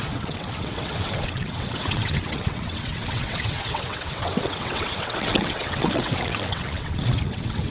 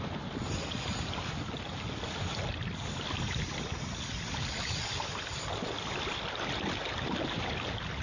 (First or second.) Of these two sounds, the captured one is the second